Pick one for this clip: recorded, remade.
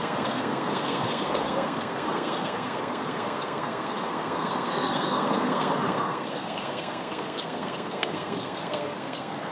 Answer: remade